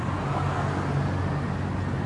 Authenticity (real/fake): real